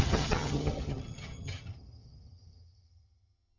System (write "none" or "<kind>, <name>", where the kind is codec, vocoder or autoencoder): vocoder, HiFi-GAN